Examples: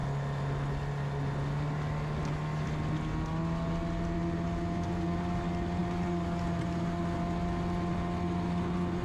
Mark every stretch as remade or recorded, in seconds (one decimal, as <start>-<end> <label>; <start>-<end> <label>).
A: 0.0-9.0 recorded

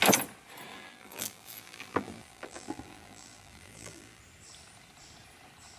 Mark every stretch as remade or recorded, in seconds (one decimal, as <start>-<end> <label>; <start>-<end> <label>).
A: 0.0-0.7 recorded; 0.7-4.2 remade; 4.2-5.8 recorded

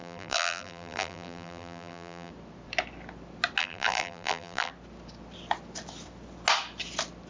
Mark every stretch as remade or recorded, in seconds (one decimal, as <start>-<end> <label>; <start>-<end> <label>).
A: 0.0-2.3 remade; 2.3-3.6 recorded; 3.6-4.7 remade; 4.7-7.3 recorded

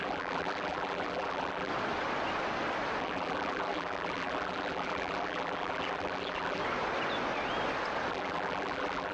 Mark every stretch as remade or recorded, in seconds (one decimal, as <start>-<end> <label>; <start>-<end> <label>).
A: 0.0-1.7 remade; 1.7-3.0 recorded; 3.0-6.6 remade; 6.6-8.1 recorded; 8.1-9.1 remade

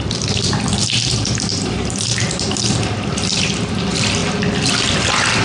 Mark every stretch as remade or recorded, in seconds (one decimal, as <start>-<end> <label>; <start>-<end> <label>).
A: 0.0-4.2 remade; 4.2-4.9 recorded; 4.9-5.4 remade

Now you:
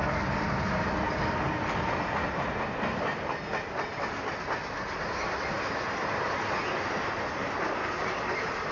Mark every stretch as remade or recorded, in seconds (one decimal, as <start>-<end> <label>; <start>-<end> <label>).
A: 0.0-8.7 recorded

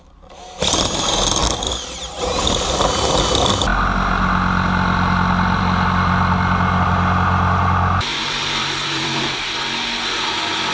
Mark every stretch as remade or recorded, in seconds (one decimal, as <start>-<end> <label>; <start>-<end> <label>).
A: 0.0-1.4 recorded; 1.4-2.9 remade; 2.9-8.1 recorded; 8.1-9.6 remade; 9.6-10.7 recorded

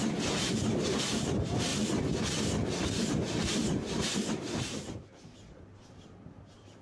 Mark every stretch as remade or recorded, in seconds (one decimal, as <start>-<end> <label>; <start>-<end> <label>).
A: 0.0-1.7 remade; 1.7-3.1 recorded; 3.1-6.8 remade